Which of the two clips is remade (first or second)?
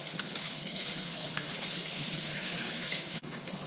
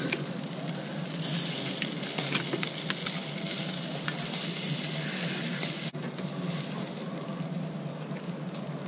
first